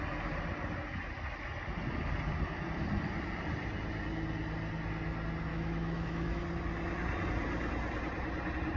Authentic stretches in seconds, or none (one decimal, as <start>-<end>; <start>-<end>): 0.0-5.5; 6.4-8.8